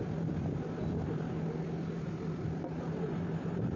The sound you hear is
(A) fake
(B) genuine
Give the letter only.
B